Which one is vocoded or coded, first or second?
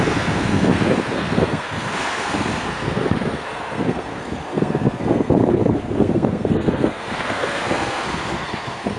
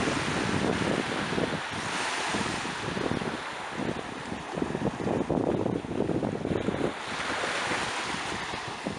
first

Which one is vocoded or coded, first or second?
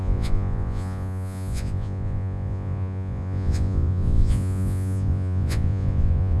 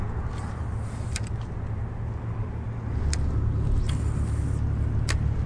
first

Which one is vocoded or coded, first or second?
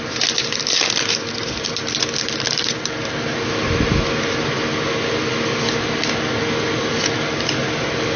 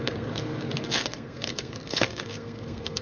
second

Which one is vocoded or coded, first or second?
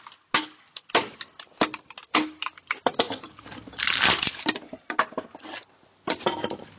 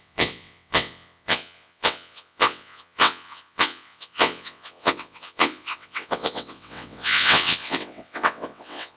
second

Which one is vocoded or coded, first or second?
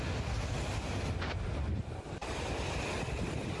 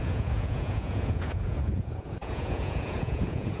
second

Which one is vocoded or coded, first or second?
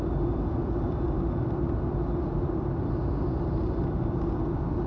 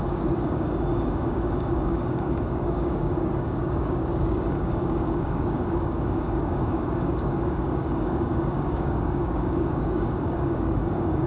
second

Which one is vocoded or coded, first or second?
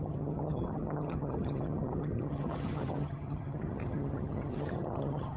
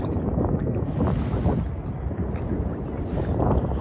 first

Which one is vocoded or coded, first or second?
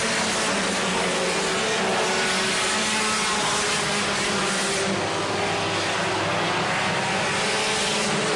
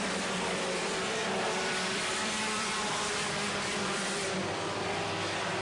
second